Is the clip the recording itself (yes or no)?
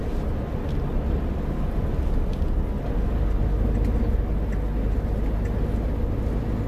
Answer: yes